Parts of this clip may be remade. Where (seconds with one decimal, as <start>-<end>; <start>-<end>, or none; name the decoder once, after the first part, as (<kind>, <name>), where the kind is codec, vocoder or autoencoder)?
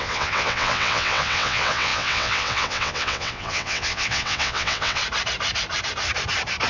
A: 0.0-5.0 (vocoder, WaveNeXt)